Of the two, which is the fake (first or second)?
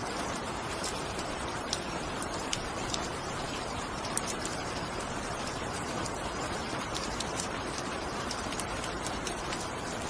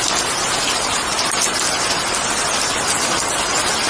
first